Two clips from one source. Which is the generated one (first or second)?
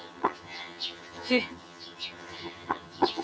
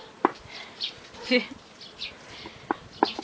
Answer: first